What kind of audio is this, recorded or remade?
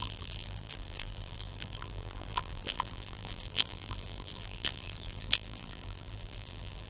remade